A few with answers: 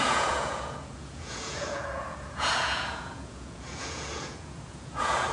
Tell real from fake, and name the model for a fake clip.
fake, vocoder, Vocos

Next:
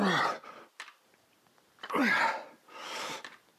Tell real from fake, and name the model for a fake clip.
real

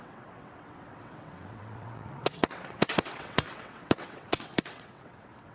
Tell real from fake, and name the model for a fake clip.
fake, vocoder, WaveNeXt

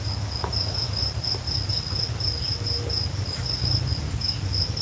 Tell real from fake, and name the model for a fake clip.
real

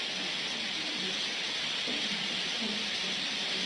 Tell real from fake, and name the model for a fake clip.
real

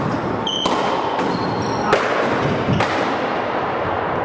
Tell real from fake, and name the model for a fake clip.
real